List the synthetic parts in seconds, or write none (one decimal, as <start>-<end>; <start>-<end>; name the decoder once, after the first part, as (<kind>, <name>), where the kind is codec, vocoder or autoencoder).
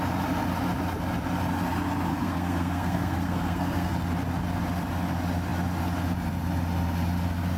2.1-3.9 (codec, SNAC)